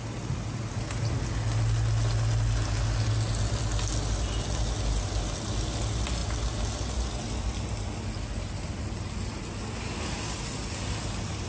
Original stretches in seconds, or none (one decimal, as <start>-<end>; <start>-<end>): 0.0-11.5